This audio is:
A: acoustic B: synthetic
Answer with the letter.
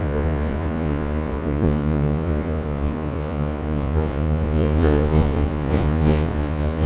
B